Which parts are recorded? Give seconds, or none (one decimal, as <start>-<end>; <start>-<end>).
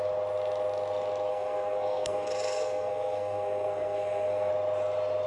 0.0-1.3; 4.5-5.3